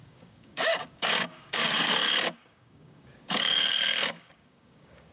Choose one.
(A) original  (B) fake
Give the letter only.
B